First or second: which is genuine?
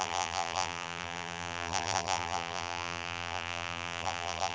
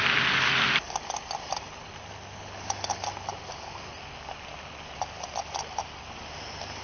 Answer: second